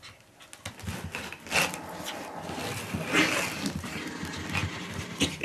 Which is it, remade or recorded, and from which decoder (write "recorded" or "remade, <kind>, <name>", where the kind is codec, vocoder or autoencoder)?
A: recorded